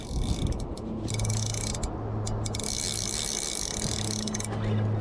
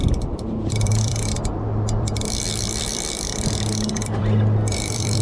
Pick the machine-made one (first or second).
second